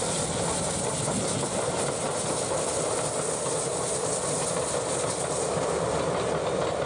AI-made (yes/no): no